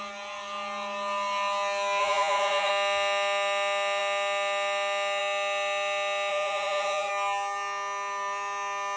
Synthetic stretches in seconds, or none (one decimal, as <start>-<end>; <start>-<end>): 2.0-2.7; 6.3-7.1